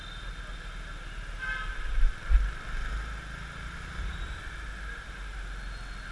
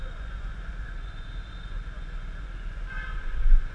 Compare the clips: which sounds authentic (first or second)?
first